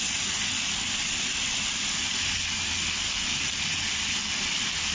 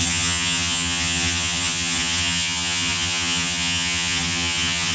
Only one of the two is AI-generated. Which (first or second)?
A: second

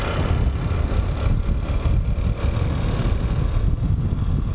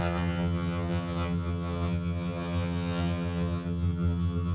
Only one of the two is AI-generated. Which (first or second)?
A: second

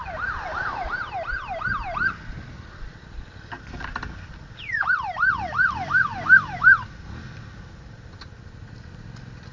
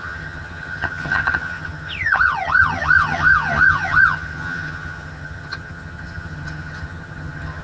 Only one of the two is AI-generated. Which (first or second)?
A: second